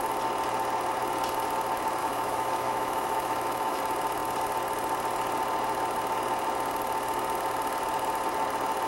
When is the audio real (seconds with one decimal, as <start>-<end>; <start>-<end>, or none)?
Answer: 0.0-2.0; 3.8-8.9